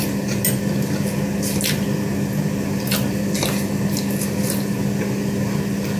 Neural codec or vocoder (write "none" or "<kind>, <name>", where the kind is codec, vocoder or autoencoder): none